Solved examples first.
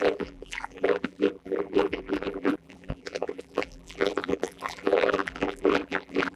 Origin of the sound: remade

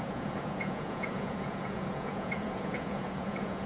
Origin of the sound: remade